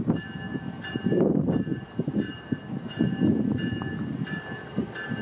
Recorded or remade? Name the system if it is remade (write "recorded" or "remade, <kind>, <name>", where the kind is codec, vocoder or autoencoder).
recorded